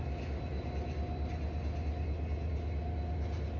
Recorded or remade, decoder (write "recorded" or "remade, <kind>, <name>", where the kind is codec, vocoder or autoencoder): recorded